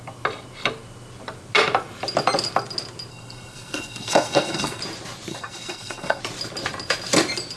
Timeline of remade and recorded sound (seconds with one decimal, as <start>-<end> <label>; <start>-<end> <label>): 0.0-3.1 recorded; 3.1-4.8 remade; 4.8-5.3 recorded; 5.3-6.2 remade; 6.2-7.6 recorded